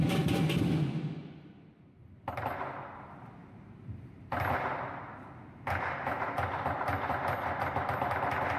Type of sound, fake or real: real